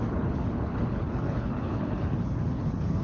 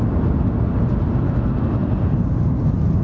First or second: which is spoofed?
first